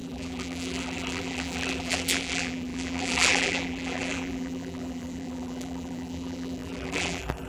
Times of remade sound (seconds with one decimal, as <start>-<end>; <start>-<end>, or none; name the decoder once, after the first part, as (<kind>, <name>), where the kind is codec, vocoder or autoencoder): 0.0-7.5 (vocoder, BigVGAN v2)